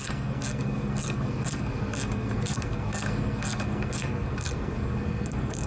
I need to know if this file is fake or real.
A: fake